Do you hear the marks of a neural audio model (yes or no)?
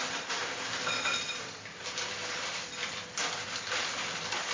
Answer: no